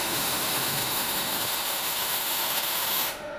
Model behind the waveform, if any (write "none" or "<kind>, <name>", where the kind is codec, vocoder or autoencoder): autoencoder, DAC-VAE